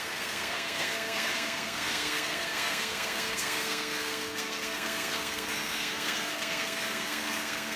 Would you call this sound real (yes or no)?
no